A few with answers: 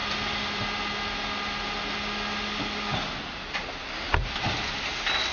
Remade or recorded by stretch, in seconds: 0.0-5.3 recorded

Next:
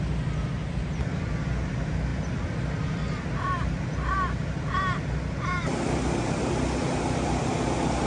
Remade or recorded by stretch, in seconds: 0.0-0.6 recorded; 0.6-1.3 remade; 1.3-2.1 recorded; 2.1-3.7 remade; 3.7-5.7 recorded; 5.7-7.6 remade; 7.6-8.1 recorded

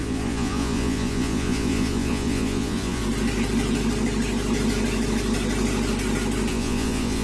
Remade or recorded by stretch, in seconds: 0.0-3.0 remade; 3.0-6.5 recorded; 6.5-7.2 remade

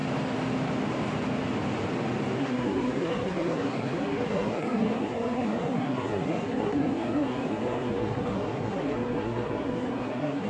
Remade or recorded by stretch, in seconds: 0.0-2.4 recorded; 2.4-10.5 remade

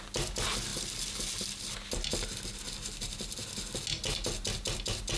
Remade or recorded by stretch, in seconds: 0.0-5.2 recorded

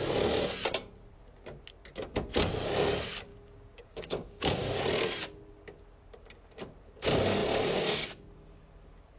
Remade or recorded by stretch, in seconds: 0.0-3.3 recorded; 3.3-4.7 remade; 4.7-9.2 recorded